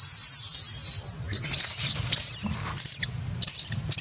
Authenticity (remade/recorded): recorded